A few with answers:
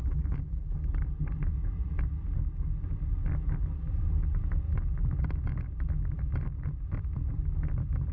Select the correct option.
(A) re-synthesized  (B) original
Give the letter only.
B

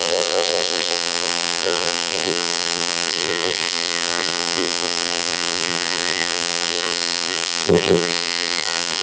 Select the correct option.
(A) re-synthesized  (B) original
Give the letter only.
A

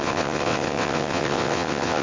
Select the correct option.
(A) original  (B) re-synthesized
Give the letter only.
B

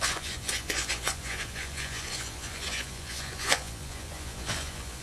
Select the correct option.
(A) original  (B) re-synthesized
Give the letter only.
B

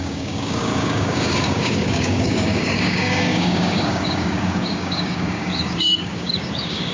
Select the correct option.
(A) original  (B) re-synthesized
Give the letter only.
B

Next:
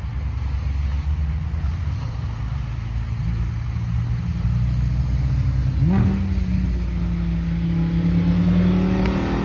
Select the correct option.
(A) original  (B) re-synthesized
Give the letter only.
A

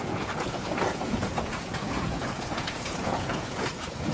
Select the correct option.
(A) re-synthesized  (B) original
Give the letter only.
A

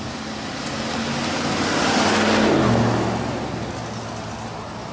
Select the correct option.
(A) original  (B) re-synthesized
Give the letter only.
A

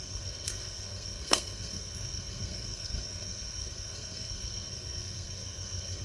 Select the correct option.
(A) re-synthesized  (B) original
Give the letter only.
A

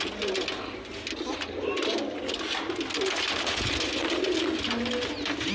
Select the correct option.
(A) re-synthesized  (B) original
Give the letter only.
B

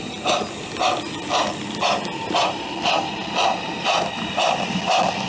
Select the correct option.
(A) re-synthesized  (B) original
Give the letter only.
B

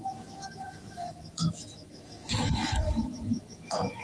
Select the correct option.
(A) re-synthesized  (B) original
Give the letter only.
A